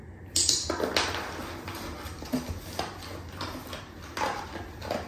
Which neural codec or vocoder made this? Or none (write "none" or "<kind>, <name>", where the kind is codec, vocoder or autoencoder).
none